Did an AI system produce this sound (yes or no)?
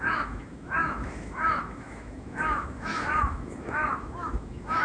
yes